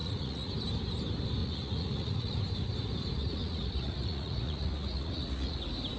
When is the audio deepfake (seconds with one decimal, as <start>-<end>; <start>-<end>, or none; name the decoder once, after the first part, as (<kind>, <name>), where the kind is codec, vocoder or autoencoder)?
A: 0.0-0.5 (vocoder, Vocos); 1.4-2.4; 3.2-5.6